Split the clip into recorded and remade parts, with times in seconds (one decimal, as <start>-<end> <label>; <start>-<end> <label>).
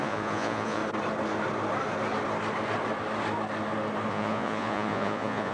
0.0-0.8 remade; 0.8-4.1 recorded; 4.1-5.5 remade